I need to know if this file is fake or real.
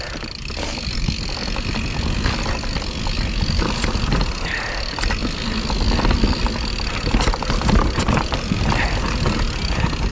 real